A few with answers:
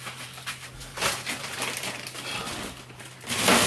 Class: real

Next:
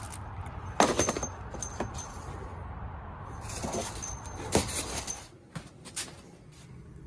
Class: real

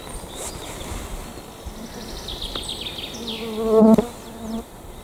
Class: real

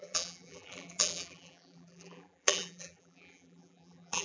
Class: fake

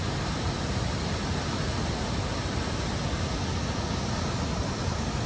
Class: real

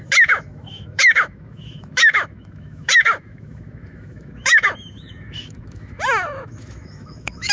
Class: fake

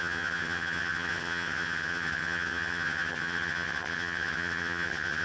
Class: fake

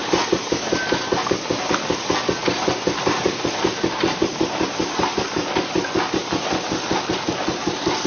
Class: real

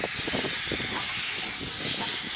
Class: real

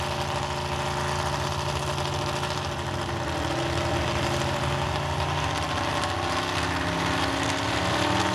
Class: real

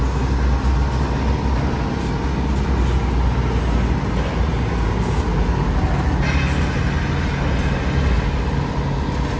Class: real